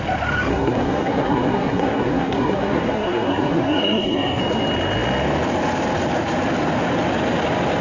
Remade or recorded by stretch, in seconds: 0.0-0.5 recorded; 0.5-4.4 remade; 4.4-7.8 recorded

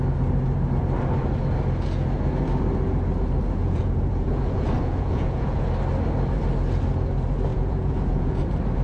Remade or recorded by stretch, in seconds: 0.0-3.6 recorded; 3.6-5.7 remade; 5.7-7.5 recorded; 7.5-8.4 remade; 8.4-8.8 recorded

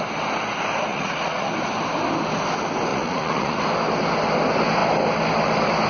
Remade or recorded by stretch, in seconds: 0.0-0.9 recorded; 0.9-1.5 remade; 1.5-2.9 recorded; 2.9-3.6 remade; 3.6-5.9 recorded